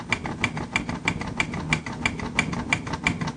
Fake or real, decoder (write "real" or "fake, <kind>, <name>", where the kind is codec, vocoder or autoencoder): real